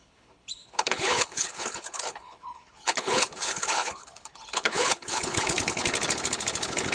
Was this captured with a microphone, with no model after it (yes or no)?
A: no